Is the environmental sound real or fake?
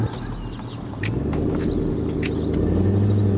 real